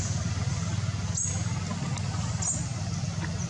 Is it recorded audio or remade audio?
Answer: recorded